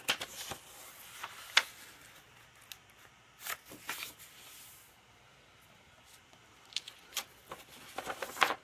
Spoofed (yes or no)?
no